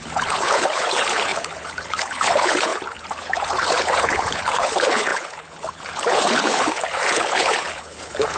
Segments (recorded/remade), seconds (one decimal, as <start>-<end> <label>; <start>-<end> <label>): 0.0-8.4 remade